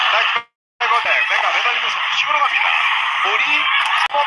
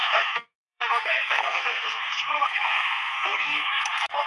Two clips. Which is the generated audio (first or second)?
second